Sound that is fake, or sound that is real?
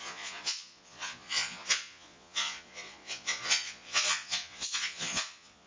fake